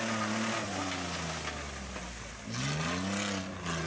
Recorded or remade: recorded